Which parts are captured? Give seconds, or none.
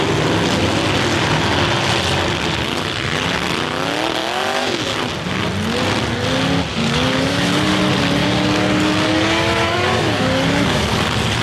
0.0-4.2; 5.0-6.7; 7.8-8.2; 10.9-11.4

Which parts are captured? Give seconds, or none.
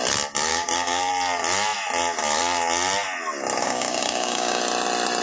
0.0-0.5; 1.1-3.6; 4.6-5.2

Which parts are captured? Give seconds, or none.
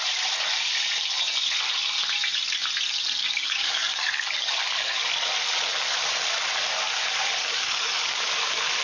0.0-3.2; 5.1-7.4; 8.3-8.8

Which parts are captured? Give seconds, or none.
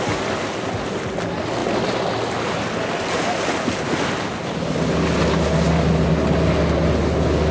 0.0-7.5